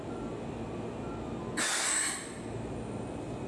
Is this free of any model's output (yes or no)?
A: yes